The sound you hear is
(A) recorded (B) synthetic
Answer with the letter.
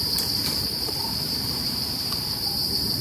B